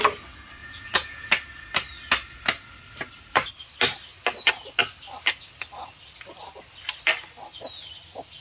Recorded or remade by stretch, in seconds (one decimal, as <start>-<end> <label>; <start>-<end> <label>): 0.0-0.6 recorded; 0.6-1.3 remade; 1.3-8.4 recorded